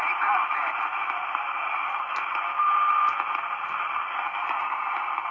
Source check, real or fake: real